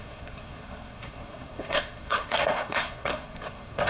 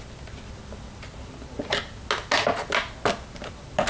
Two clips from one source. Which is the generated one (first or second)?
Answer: first